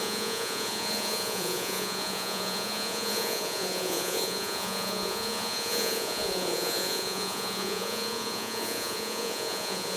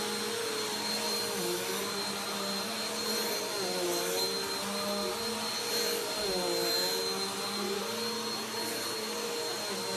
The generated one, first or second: first